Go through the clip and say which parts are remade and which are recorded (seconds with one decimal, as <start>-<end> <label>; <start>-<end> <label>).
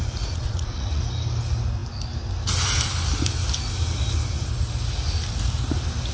0.0-1.0 remade; 1.0-6.1 recorded